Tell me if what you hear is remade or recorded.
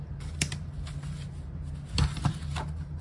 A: recorded